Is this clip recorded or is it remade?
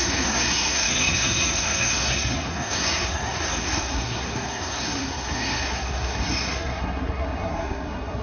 remade